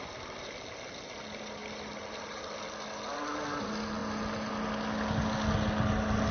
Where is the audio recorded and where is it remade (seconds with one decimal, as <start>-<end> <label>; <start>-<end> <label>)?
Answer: 0.0-6.3 recorded